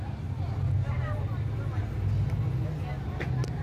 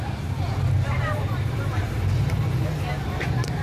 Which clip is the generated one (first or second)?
second